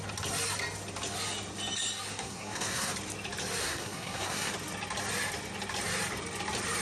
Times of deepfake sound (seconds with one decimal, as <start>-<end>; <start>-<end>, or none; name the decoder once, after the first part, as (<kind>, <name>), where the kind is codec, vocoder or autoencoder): 2.1-2.9 (codec, SNAC); 3.6-4.5